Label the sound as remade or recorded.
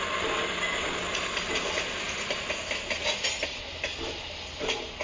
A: recorded